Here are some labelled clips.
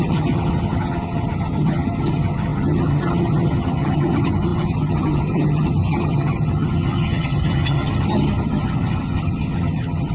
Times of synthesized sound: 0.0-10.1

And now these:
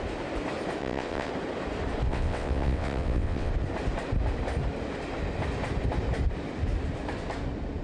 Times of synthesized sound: 0.8-1.3; 2.1-3.5

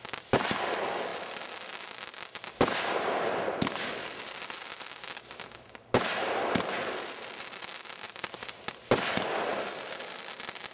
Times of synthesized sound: none

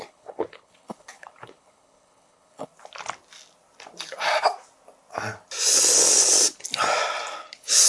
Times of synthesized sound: 0.0-2.7; 7.4-7.9